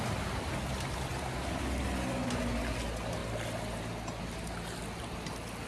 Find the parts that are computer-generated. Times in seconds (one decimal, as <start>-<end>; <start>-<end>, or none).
none

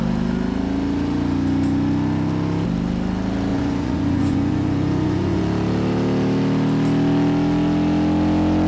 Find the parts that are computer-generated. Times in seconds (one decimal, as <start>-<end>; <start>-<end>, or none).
3.5-5.4

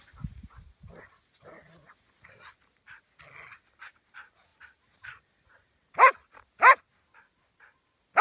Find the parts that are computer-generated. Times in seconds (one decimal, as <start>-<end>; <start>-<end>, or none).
none

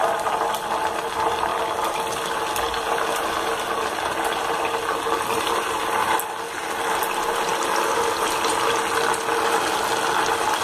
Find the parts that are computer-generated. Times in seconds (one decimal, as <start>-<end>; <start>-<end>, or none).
none

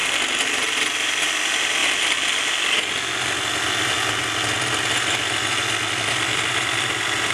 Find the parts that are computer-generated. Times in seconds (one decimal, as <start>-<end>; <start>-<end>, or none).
0.5-1.8; 6.1-7.3

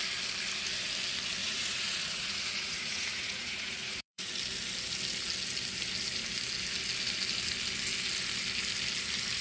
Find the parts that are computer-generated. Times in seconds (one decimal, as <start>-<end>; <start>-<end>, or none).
1.4-4.3